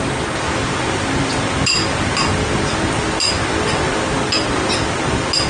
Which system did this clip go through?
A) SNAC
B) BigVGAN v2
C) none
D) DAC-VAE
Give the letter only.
C